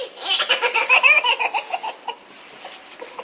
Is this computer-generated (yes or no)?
no